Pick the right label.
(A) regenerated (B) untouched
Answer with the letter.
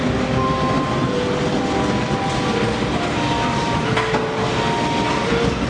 B